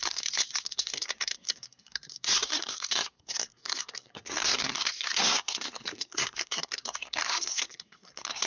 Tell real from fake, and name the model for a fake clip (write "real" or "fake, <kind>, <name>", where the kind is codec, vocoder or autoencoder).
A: fake, codec, SNAC